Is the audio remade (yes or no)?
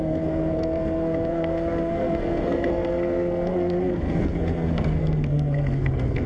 yes